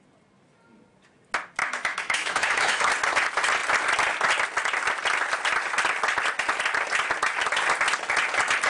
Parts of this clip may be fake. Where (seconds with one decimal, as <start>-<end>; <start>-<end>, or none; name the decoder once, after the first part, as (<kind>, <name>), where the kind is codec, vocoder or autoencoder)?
1.6-2.9 (autoencoder, DAC-VAE)